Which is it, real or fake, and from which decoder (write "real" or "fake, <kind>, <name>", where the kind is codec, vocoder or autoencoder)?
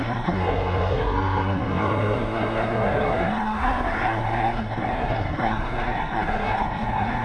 fake, codec, SNAC